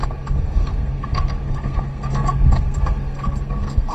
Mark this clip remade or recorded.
remade